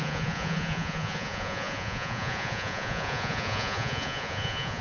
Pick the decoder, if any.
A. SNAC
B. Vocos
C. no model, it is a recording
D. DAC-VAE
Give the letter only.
B